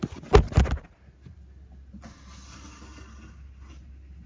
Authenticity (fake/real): real